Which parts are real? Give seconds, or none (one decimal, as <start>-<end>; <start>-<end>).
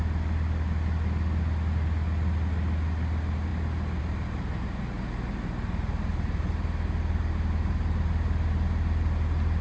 0.0-9.6